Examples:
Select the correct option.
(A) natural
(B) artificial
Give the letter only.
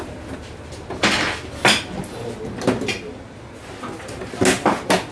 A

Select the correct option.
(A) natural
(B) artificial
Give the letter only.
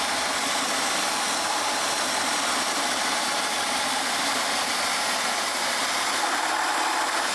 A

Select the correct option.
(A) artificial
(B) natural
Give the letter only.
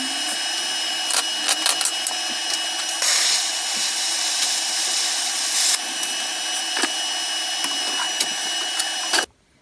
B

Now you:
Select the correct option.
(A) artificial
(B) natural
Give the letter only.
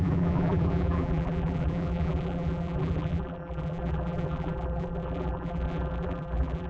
A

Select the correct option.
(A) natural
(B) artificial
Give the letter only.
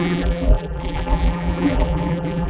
B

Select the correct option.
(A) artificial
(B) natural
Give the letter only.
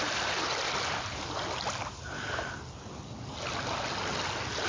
B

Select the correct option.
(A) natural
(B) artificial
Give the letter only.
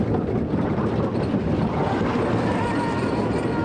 A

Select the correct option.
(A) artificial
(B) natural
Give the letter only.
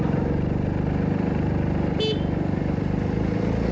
B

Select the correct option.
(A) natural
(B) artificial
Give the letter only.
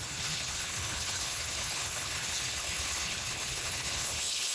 B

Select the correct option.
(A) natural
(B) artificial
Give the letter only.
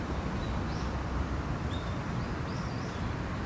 B